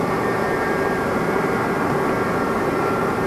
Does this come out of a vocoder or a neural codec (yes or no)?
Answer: yes